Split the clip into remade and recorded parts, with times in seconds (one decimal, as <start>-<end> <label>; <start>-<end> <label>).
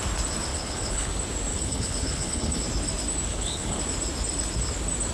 0.0-0.5 recorded; 0.5-1.1 remade; 1.1-1.5 recorded; 1.5-2.6 remade; 2.6-3.3 recorded; 3.3-3.8 remade; 3.8-5.1 recorded